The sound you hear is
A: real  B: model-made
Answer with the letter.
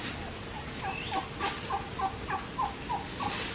A